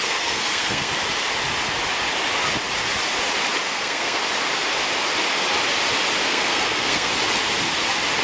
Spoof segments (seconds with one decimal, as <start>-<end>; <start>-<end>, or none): 0.0-0.9; 3.7-4.2; 6.2-7.1